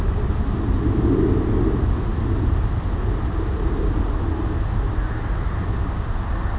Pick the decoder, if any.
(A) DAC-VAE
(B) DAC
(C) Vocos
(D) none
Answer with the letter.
D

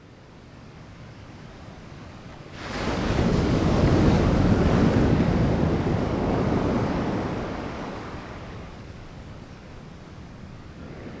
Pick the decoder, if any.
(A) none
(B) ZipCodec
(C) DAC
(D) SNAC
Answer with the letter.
C